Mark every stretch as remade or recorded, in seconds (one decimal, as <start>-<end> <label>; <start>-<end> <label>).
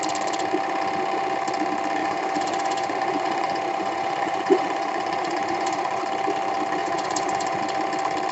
0.0-2.0 recorded; 2.0-6.0 remade; 6.0-6.8 recorded; 6.8-7.6 remade; 7.6-8.3 recorded